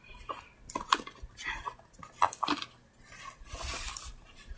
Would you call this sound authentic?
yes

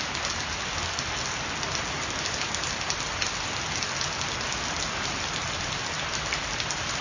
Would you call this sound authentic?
yes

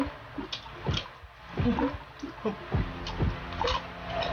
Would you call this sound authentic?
yes